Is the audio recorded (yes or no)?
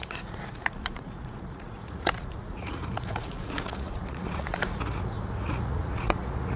no